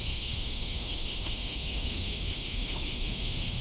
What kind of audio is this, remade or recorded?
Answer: remade